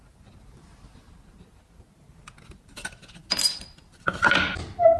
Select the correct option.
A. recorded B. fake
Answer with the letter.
A